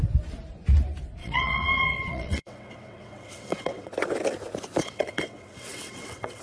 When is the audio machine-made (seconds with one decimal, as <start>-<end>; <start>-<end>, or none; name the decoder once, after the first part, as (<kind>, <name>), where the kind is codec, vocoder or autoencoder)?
1.2-3.9 (vocoder, WaveNeXt); 4.8-6.4